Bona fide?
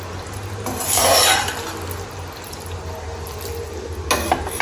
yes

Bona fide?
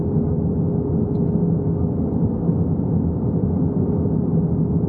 yes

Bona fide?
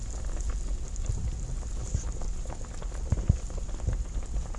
yes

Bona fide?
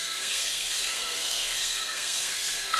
no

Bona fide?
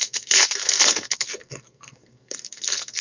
no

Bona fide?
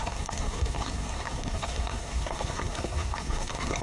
no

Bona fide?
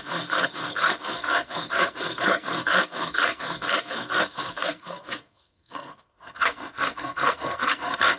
no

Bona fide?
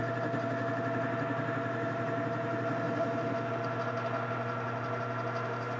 yes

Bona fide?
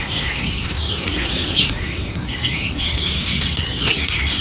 no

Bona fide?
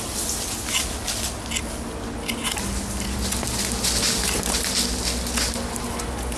yes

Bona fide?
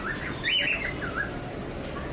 yes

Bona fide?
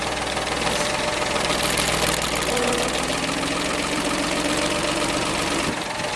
yes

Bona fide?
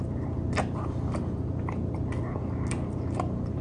yes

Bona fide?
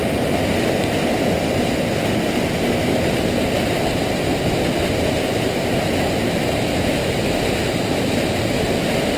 yes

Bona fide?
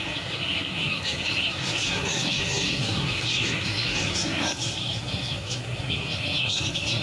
no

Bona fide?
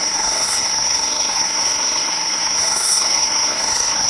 no